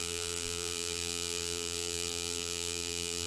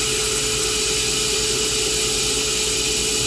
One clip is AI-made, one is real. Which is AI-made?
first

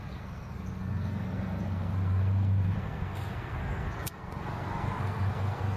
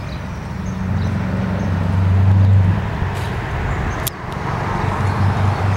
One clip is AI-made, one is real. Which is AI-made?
first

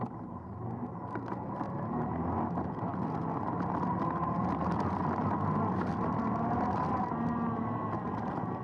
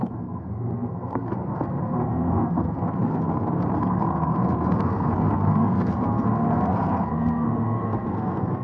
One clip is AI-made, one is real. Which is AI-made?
second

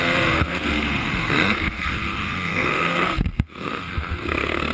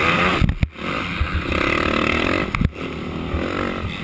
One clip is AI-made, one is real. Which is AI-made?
first